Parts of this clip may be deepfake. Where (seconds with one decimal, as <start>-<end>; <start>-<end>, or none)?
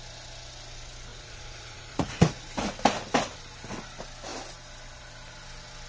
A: 1.1-2.3